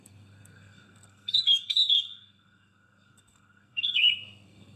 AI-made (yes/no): yes